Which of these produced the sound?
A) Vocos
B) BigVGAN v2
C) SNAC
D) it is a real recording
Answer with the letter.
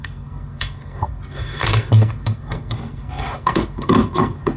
C